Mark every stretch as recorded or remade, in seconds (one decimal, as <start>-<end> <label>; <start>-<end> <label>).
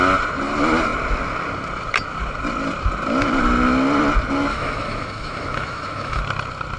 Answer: 0.0-4.5 recorded; 4.5-6.2 remade; 6.2-6.8 recorded